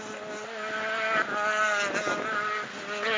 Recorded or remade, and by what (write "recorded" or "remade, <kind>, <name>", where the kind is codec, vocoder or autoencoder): recorded